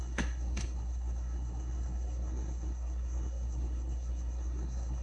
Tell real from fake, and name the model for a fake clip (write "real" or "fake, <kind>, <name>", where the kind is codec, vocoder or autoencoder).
fake, codec, SNAC